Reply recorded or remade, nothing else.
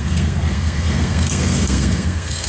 remade